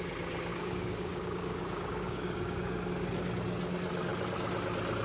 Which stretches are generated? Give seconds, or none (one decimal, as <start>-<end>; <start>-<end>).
0.5-2.9